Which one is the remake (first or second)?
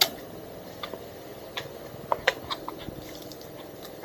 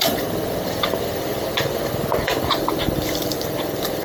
second